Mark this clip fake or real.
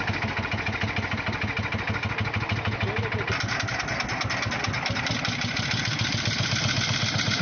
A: real